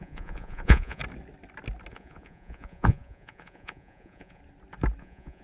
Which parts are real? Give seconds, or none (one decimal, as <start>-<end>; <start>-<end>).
1.0-1.9; 4.4-5.0